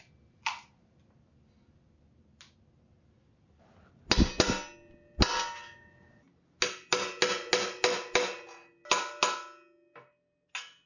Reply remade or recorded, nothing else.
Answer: recorded